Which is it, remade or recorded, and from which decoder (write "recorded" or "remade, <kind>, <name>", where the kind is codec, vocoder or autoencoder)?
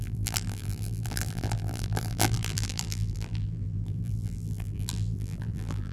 remade, vocoder, BigVGAN v2